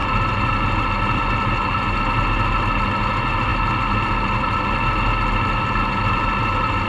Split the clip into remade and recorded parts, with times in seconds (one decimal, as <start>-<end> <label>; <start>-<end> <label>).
0.0-6.9 recorded